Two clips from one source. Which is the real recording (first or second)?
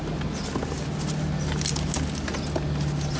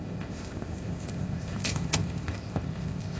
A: first